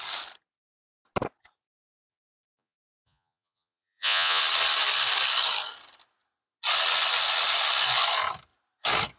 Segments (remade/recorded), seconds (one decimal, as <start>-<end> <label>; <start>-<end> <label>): 0.0-1.8 recorded; 1.8-4.4 remade; 4.4-9.2 recorded